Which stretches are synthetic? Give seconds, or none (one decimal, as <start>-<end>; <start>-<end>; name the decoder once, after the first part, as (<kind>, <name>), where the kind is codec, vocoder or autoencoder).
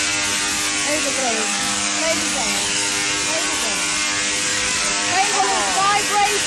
1.2-2.9 (codec, DAC); 4.5-5.4